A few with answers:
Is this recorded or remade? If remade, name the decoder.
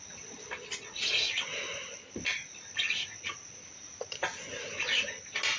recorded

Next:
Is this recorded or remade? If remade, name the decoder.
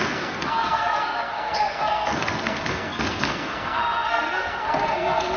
remade, codec, SNAC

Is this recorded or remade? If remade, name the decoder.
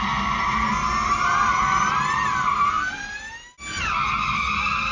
recorded